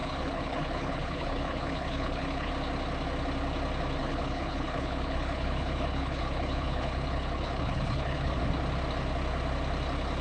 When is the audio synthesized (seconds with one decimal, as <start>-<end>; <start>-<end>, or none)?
0.0-2.5; 4.0-8.4